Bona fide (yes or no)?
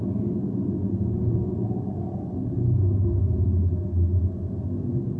yes